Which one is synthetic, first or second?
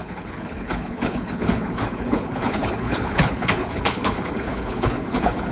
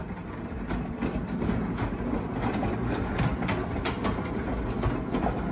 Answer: first